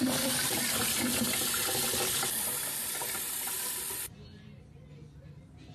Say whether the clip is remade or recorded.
remade